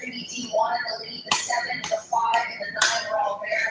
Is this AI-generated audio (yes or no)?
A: yes